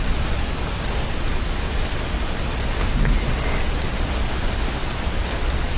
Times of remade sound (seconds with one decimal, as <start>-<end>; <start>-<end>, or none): none